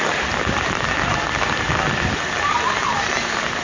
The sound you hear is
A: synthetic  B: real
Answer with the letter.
B